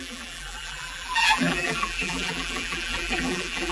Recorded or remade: remade